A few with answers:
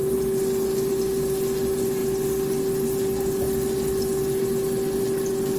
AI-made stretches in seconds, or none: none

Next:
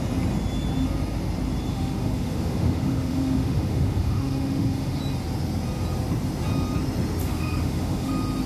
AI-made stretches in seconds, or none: 1.7-5.0 (autoencoder, DAC-VAE); 7.2-8.1

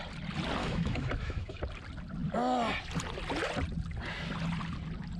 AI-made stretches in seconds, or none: 0.6-1.6 (autoencoder, DAC-VAE)

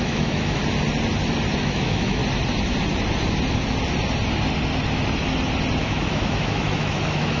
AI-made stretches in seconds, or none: 0.0-0.6 (autoencoder, DAC-VAE); 1.6-2.2; 5.8-7.4

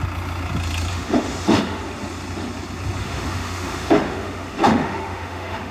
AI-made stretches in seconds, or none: 0.9-1.8 (autoencoder, DAC-VAE); 3.0-5.7